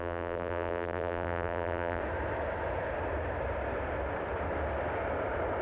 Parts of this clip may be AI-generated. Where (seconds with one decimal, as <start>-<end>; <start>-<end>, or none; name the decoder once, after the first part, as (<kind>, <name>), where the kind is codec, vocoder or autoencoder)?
0.0-2.0 (vocoder, BigVGAN v2)

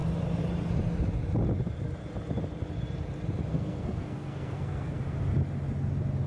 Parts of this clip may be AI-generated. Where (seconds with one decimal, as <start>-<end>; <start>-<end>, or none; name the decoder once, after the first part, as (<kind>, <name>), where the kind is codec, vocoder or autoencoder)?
3.5-5.2 (codec, SNAC)

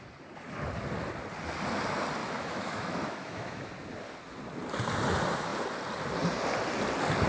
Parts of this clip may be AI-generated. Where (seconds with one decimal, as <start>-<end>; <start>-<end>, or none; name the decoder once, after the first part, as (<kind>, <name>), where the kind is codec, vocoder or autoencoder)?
2.2-3.7 (autoencoder, DAC-VAE)

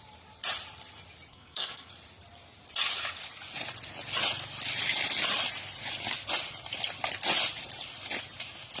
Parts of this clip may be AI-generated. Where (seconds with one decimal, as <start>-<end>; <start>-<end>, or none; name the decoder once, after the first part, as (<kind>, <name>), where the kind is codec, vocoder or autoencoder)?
1.3-1.9 (codec, SNAC)

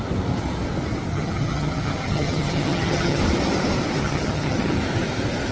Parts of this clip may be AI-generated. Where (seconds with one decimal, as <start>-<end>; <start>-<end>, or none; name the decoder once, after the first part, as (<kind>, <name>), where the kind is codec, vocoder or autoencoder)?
1.1-3.2 (vocoder, HiFi-GAN); 4.0-4.8

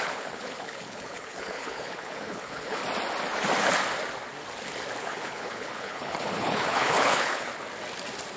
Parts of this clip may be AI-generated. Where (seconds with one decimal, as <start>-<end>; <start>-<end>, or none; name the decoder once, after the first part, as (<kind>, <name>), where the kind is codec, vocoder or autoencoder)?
0.0-2.8 (codec, HILCodec); 5.0-7.5